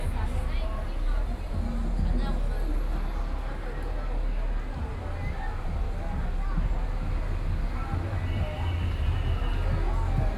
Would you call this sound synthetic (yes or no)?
no